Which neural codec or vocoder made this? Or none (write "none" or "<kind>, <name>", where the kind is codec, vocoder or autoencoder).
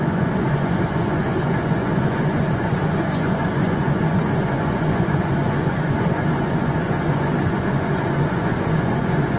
vocoder, Vocos